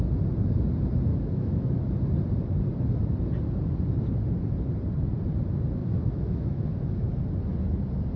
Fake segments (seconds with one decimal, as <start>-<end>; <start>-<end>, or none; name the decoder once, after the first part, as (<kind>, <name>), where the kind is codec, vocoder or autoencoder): 1.1-1.9 (autoencoder, DAC-VAE); 5.8-7.1